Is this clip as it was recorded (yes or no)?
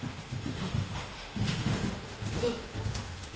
no